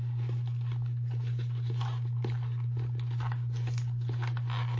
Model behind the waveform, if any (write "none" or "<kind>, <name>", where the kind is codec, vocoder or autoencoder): none